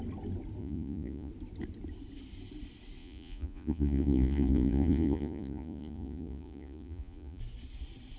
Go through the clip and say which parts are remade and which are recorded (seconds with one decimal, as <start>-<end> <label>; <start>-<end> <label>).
0.0-0.6 recorded; 0.6-1.3 remade; 1.3-3.0 recorded; 3.0-7.4 remade; 7.4-8.2 recorded